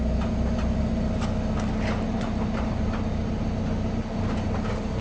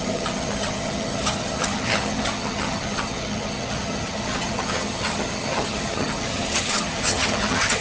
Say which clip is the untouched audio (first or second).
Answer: first